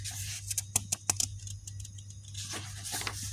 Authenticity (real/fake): real